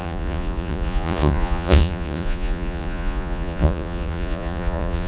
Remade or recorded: remade